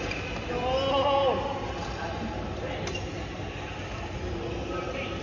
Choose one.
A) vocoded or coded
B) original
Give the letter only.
B